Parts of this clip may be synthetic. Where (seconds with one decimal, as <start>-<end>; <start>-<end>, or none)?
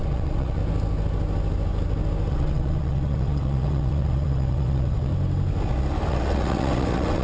0.0-0.6; 2.3-5.1; 6.1-7.2